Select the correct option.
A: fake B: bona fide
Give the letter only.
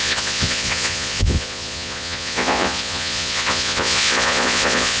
A